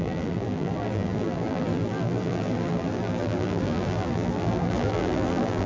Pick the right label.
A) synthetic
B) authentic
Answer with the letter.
A